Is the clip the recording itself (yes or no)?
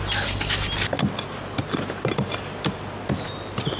yes